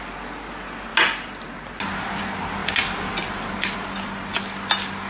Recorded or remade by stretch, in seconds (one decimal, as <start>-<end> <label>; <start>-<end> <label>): 0.0-5.1 recorded